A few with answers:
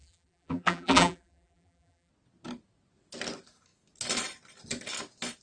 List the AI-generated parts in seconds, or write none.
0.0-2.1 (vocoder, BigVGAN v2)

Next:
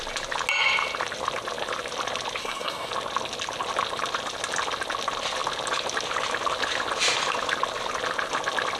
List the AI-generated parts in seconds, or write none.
2.4-2.9 (codec, SNAC)